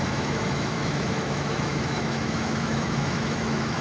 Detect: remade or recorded remade